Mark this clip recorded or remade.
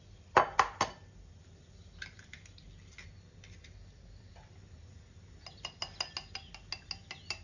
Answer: recorded